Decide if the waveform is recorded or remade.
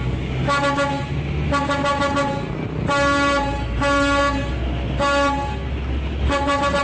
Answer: recorded